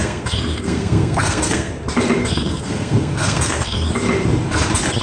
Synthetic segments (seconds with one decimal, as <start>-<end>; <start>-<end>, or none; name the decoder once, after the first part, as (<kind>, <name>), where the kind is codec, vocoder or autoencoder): 0.0-1.7 (codec, SNAC); 2.2-3.9